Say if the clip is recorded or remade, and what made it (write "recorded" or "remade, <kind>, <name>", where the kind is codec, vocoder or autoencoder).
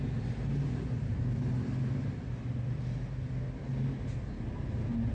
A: recorded